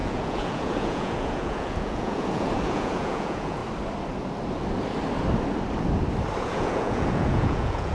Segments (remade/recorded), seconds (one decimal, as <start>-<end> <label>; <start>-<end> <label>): 0.0-3.6 remade; 3.6-6.4 recorded; 6.4-7.9 remade